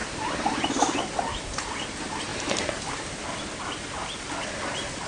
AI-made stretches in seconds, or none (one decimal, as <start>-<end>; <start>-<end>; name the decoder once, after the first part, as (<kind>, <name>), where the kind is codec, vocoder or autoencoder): 0.0-1.0 (vocoder, BigVGAN v2)